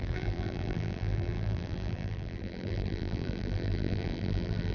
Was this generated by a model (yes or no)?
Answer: yes